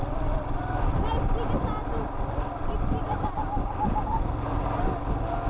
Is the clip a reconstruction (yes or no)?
no